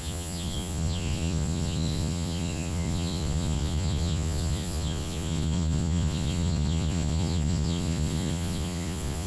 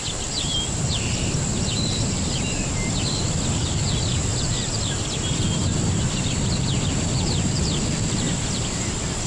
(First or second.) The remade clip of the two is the first